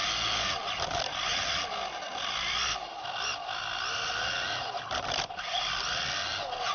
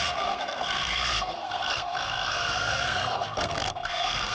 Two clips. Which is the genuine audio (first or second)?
first